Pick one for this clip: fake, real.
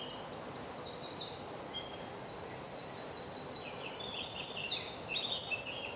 real